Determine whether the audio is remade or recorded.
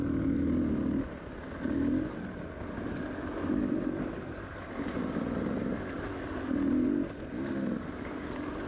recorded